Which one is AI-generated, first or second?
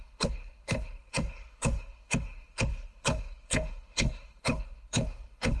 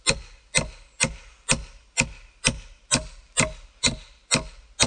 first